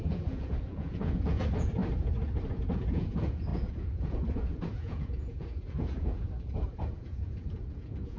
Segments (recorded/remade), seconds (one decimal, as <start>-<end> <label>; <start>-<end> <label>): 0.0-1.8 remade; 1.8-2.5 recorded; 2.5-8.2 remade